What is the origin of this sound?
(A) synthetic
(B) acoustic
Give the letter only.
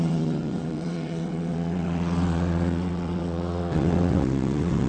A